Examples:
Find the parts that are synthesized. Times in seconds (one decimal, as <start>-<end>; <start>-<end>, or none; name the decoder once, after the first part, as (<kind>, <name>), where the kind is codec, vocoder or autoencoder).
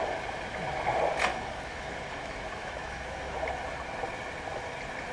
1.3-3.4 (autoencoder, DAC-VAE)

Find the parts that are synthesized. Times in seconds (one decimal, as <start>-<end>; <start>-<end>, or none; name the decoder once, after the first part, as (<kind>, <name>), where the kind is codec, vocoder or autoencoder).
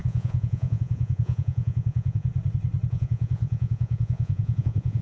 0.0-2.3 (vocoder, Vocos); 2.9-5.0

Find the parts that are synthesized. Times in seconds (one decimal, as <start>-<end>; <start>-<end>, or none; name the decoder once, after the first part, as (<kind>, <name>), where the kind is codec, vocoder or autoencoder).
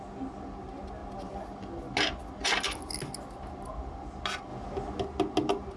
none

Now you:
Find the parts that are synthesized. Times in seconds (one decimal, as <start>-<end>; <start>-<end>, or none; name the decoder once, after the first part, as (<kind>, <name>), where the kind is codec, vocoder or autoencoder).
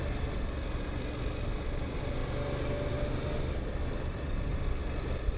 none